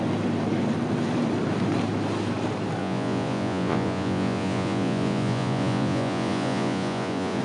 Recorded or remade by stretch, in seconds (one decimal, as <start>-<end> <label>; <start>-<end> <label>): 0.0-2.8 recorded; 2.8-7.4 remade